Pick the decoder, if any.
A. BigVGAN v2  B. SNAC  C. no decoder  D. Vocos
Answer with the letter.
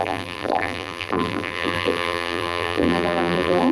A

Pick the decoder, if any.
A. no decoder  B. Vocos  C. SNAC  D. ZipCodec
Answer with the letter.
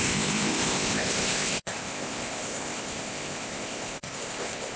D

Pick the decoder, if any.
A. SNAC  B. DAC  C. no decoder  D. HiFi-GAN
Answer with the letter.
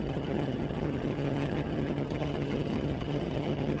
D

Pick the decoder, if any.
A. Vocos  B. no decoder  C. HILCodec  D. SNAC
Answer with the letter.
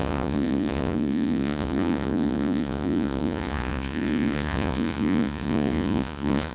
A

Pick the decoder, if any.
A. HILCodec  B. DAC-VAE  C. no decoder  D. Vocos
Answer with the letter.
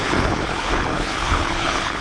A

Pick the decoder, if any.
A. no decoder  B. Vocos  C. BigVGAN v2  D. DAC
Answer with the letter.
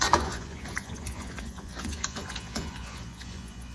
B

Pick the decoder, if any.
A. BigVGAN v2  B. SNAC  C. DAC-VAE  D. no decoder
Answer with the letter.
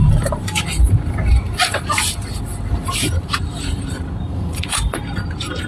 A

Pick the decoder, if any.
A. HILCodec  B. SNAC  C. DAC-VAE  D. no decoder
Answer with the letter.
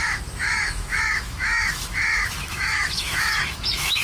C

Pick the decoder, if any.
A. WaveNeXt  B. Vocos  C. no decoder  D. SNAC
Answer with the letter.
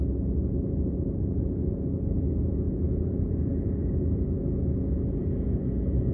B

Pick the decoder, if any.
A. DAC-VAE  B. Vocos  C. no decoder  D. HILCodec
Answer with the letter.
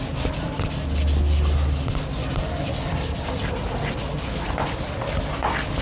C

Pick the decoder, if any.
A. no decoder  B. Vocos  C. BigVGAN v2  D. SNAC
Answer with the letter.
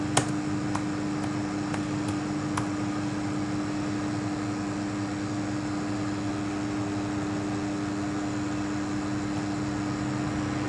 A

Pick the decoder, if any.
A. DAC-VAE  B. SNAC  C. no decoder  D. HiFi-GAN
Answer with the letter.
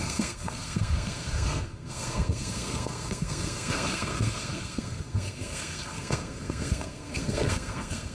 B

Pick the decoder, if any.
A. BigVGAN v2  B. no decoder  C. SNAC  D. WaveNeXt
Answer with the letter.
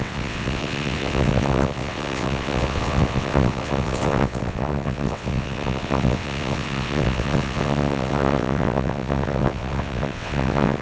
D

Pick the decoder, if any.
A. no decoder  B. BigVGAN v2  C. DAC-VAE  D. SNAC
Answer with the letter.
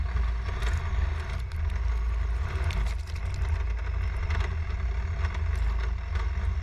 A